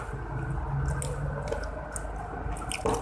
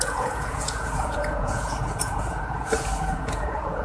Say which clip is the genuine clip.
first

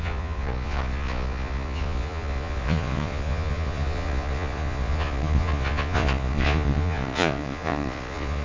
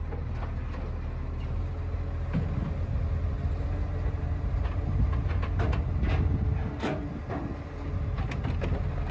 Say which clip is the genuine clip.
second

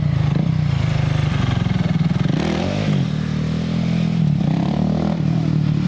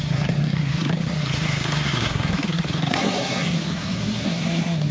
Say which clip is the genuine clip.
first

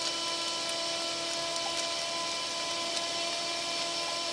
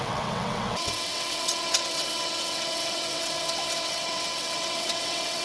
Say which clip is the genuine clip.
first